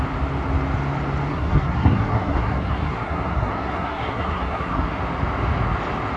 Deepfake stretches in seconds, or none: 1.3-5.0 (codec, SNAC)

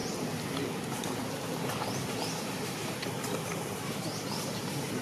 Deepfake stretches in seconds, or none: none

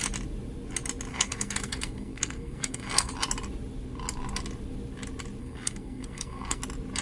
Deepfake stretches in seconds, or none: 1.1-3.1 (codec, SNAC); 5.4-6.6

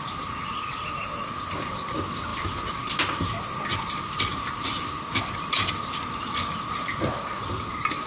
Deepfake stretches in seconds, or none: none

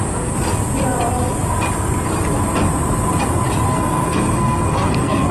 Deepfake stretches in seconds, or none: 3.7-5.3 (codec, SNAC)